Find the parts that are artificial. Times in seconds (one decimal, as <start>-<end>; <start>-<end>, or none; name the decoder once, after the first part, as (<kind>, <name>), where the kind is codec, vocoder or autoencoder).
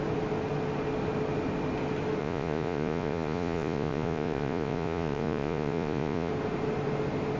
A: 2.2-6.3 (vocoder, Vocos)